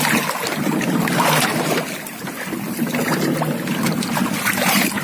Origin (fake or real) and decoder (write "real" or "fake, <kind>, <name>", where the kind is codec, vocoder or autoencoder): real